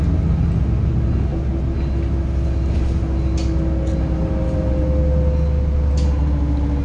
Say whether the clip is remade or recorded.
recorded